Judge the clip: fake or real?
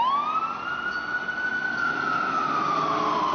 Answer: real